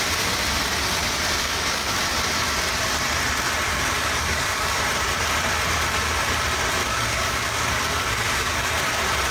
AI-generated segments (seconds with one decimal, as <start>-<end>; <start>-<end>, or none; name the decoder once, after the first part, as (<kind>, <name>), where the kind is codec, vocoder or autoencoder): 1.4-2.0 (codec, DAC); 3.7-4.8; 6.8-8.7